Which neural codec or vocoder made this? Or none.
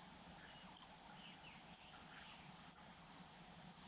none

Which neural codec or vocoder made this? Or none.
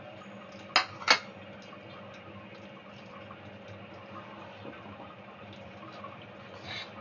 none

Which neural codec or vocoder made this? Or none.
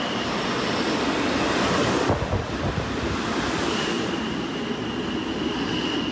none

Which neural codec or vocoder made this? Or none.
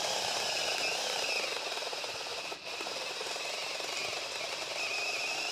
none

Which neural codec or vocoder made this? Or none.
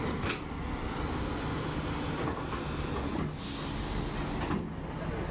none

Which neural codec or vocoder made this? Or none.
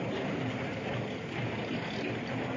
none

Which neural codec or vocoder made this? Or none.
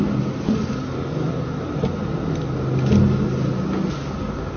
none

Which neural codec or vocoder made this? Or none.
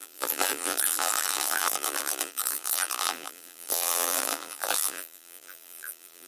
vocoder, BigVGAN v2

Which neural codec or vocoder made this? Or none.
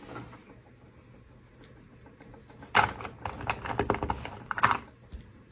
none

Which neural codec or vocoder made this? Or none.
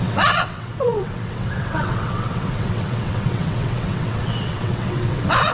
vocoder, WaveNeXt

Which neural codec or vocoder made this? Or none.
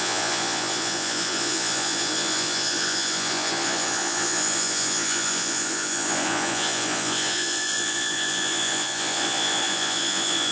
vocoder, Vocos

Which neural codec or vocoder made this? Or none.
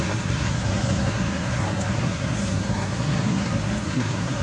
codec, SNAC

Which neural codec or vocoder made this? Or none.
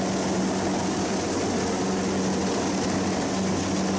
none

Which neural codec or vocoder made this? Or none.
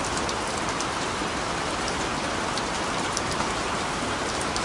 none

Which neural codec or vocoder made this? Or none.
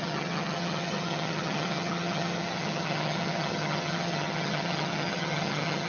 vocoder, HiFi-GAN